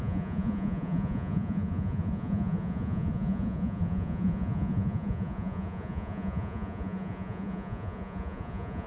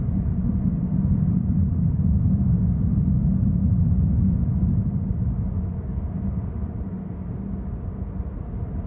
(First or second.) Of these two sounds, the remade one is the first